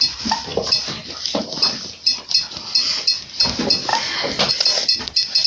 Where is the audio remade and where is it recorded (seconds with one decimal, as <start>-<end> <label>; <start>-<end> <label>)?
0.0-5.5 recorded